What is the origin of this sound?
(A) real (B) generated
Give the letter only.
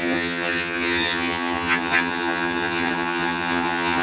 B